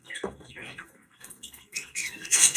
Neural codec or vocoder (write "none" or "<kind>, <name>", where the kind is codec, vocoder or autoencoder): codec, SNAC